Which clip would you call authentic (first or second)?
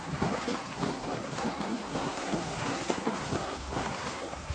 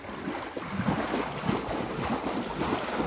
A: second